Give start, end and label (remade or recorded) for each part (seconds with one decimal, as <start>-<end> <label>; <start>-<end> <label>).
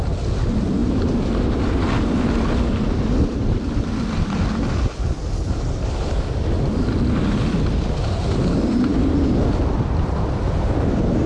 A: 0.0-11.3 recorded